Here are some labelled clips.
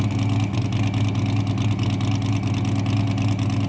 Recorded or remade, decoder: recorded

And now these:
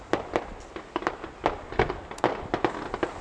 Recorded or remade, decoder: recorded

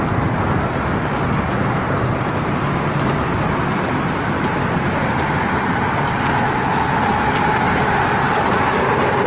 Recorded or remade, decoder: recorded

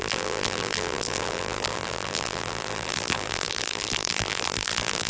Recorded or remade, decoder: remade, vocoder, BigVGAN v2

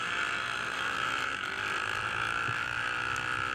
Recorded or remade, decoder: recorded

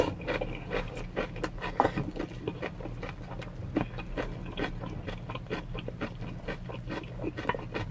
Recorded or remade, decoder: recorded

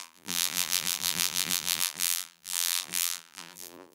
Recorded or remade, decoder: remade, vocoder, BigVGAN v2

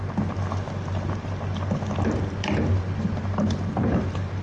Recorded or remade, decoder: remade, vocoder, BigVGAN v2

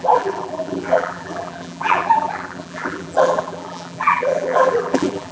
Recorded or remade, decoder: remade, vocoder, BigVGAN v2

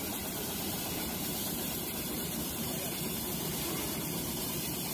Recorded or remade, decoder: remade, vocoder, BigVGAN v2